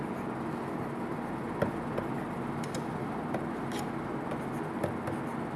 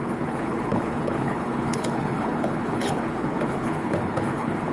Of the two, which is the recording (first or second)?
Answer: first